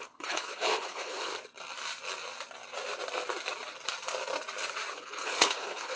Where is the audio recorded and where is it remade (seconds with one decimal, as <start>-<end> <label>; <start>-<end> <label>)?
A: 0.0-1.3 remade; 1.3-4.9 recorded; 4.9-6.0 remade